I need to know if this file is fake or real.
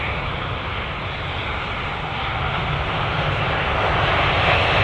real